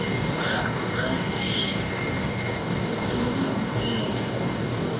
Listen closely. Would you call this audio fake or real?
fake